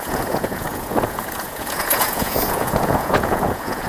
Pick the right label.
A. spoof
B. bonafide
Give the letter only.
A